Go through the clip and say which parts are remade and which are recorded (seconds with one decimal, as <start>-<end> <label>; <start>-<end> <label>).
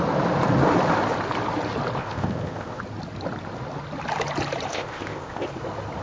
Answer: 0.0-2.0 recorded; 2.0-2.8 remade; 2.8-4.7 recorded; 4.7-5.5 remade; 5.5-6.0 recorded